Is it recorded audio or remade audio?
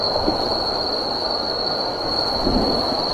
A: recorded